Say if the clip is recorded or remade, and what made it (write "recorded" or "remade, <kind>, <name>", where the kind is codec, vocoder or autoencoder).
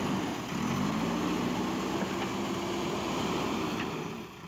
recorded